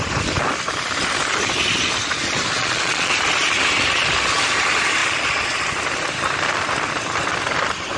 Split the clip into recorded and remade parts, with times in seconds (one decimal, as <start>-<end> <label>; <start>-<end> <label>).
0.0-2.6 recorded; 2.6-3.1 remade; 3.1-8.0 recorded